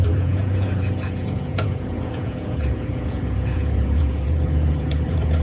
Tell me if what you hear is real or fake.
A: fake